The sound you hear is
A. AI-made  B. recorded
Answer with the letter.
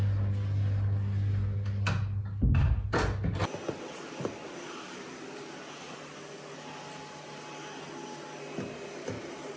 B